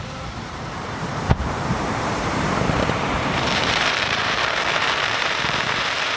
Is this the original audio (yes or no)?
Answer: no